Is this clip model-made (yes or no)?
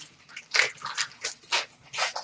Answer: no